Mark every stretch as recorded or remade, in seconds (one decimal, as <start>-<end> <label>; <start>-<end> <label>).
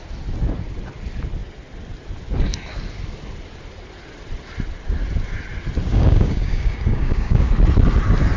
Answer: 0.0-5.9 recorded; 5.9-7.5 remade; 7.5-8.4 recorded